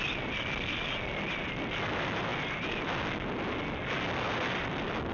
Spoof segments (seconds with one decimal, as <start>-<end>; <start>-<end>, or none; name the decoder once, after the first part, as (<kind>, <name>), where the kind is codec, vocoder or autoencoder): none